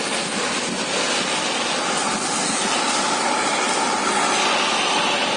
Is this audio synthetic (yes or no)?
no